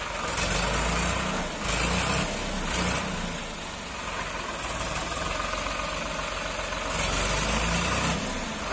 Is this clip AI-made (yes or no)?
no